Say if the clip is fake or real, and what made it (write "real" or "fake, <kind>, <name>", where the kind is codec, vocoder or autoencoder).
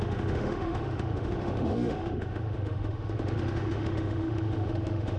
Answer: fake, autoencoder, DAC-VAE